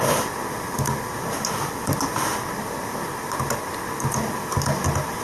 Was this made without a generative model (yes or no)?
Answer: yes